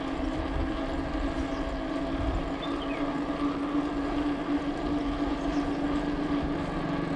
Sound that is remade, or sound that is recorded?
recorded